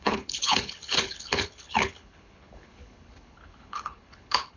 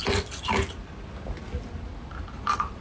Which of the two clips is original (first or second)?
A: second